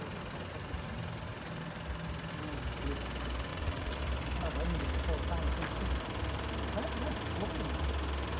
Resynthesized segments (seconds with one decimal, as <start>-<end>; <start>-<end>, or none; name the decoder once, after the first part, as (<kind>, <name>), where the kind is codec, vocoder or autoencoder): 3.5-4.0 (vocoder, WaveNeXt)